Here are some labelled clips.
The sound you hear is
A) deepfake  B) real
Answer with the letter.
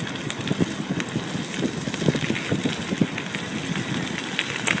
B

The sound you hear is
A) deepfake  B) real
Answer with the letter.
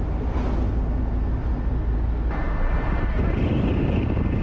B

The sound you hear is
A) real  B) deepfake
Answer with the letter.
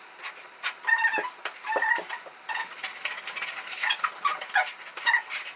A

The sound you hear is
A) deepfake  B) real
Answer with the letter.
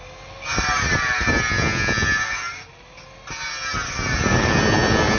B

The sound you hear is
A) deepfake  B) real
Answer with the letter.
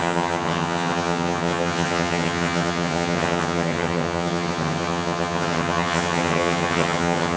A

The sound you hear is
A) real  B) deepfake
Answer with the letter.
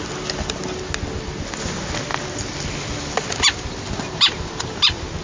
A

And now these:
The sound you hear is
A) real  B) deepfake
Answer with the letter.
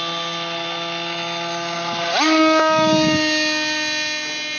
A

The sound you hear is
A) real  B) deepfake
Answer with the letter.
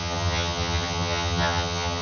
B